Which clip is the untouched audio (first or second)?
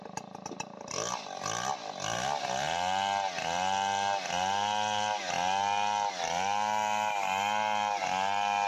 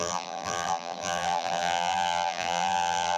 first